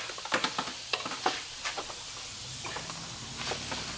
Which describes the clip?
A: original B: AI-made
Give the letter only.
A